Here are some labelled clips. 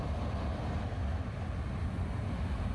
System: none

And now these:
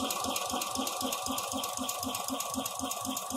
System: vocoder, BigVGAN v2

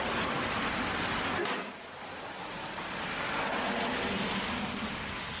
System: none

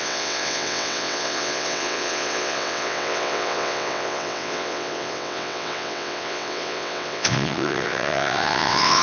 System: vocoder, WaveNeXt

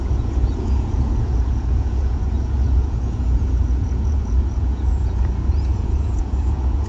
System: vocoder, Vocos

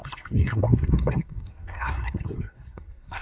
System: codec, SNAC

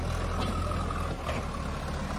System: none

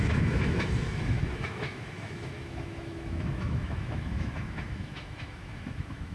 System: autoencoder, DAC-VAE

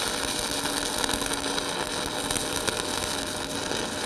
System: none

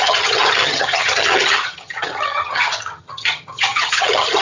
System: vocoder, HiFi-GAN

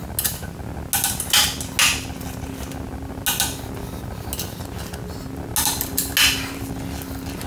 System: none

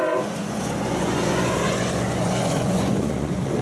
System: vocoder, Vocos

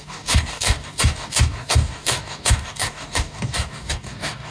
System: codec, DAC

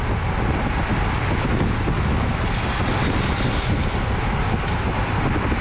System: none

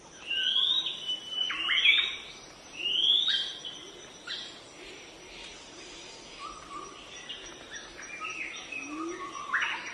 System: none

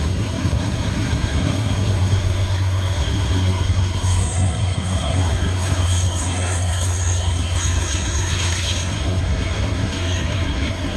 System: codec, SNAC